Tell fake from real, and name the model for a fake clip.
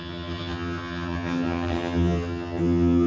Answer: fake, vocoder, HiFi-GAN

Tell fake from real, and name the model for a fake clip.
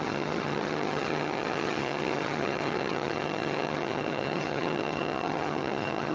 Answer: fake, vocoder, HiFi-GAN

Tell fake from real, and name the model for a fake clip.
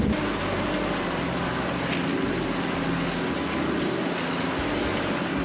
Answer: real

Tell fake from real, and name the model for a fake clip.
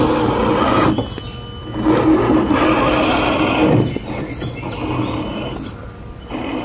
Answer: real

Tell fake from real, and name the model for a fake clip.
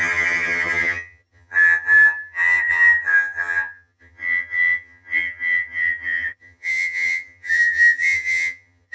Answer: fake, vocoder, HiFi-GAN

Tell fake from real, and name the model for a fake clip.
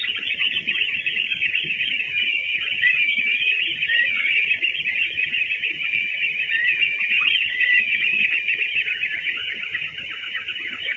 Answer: fake, vocoder, HiFi-GAN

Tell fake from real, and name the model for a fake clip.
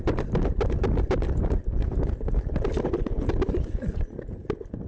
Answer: real